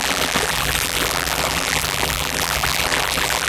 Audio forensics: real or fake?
fake